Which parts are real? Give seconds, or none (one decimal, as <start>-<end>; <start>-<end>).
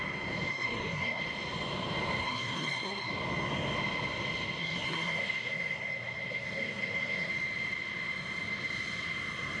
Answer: 0.0-0.5; 1.2-2.2; 3.1-4.6; 7.3-9.6